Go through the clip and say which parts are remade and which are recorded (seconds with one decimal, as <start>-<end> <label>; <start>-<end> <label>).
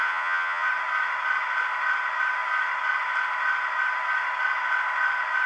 0.0-0.7 remade; 0.7-5.5 recorded